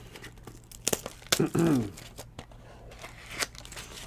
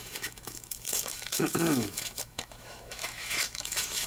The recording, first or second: first